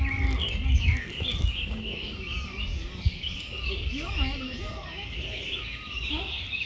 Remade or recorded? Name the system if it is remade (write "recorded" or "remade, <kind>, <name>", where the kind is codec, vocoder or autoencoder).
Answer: remade, codec, DAC